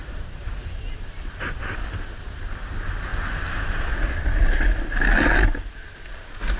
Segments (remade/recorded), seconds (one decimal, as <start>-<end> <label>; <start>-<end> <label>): 0.0-1.6 remade; 1.6-6.6 recorded